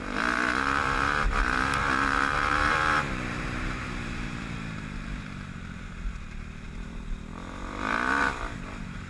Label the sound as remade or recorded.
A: remade